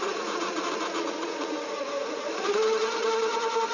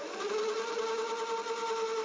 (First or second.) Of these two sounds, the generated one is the first